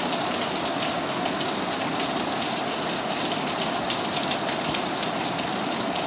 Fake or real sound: real